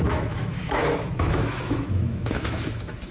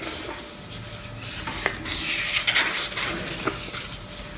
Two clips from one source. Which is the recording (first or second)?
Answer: second